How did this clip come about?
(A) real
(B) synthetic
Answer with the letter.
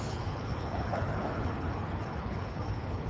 B